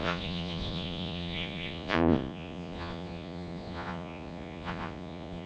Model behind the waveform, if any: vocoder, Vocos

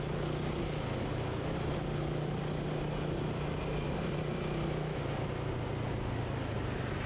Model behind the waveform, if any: none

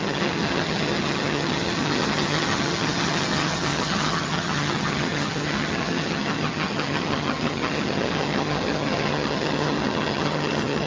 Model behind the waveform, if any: vocoder, HiFi-GAN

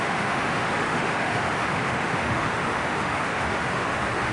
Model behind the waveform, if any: autoencoder, DAC-VAE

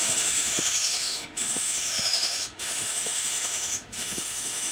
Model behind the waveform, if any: autoencoder, DAC-VAE